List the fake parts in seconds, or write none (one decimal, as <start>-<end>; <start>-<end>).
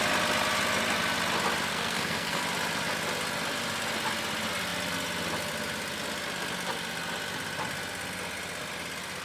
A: 1.7-2.4